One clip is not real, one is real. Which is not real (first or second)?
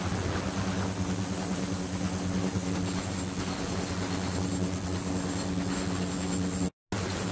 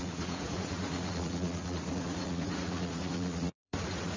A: second